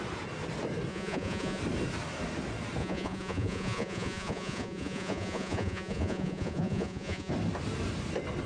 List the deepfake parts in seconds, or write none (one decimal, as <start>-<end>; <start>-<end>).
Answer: 0.9-1.6; 2.8-7.3